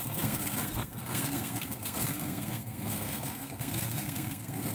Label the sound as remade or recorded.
remade